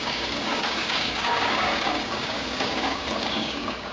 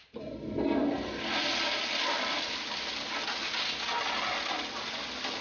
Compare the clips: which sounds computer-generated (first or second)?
first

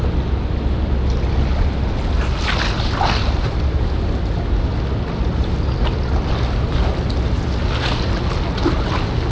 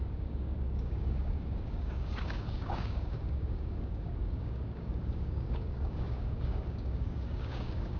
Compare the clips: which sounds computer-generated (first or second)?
second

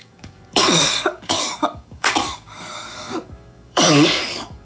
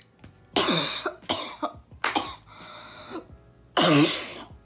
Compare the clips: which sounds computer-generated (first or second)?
first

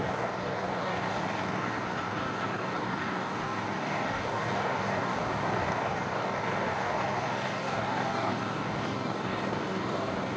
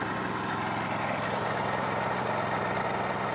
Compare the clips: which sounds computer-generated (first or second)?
first